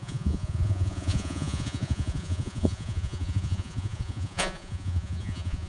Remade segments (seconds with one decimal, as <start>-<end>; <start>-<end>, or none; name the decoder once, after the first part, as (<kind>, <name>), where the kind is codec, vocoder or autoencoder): 0.0-5.7 (vocoder, Vocos)